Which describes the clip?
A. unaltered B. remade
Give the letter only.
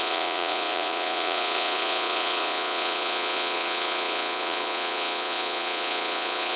B